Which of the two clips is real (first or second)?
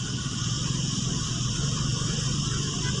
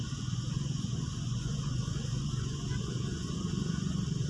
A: first